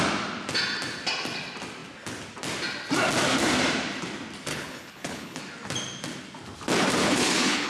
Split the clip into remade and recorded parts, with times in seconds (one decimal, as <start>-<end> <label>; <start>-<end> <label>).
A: 0.0-4.5 recorded; 4.5-5.4 remade; 5.4-7.0 recorded; 7.0-7.7 remade